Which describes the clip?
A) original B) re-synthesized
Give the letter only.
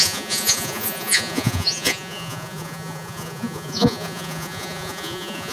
B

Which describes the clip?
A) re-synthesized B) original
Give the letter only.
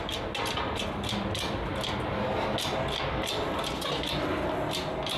B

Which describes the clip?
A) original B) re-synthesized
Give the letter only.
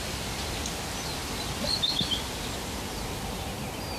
A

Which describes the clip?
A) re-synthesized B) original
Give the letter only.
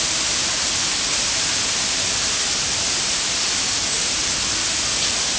B